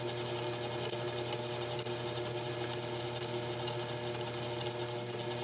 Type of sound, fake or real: real